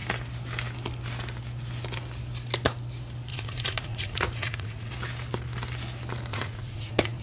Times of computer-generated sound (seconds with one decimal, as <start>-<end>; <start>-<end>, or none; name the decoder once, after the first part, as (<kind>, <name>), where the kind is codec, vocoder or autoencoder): 3.3-4.9 (vocoder, Vocos); 6.3-7.2